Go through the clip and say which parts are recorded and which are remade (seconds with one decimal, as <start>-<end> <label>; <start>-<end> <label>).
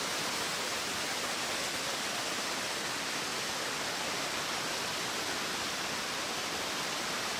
0.0-7.4 recorded